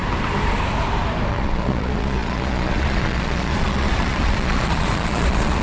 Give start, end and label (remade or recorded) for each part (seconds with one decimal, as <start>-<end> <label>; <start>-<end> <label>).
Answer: 0.0-1.3 recorded; 1.3-5.6 remade